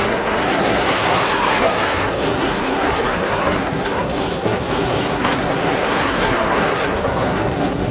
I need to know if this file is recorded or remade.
remade